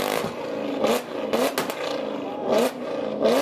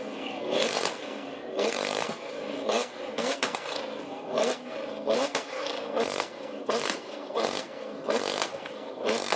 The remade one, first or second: second